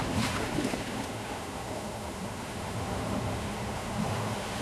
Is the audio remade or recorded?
remade